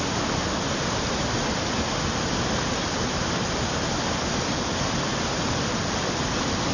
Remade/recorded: recorded